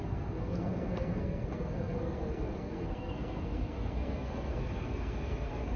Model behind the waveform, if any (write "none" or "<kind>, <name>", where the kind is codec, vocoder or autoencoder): codec, SNAC